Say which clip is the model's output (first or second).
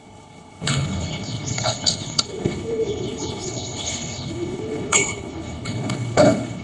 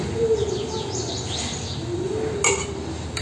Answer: first